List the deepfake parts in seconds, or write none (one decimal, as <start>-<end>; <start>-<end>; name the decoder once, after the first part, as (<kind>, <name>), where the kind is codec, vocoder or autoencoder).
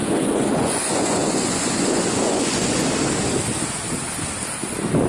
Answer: 0.0-2.9 (vocoder, Vocos)